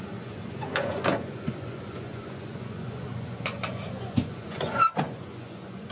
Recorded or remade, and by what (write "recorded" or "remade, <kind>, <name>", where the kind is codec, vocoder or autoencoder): remade, vocoder, Vocos